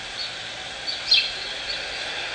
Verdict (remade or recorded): recorded